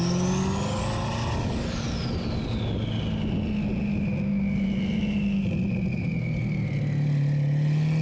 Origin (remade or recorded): recorded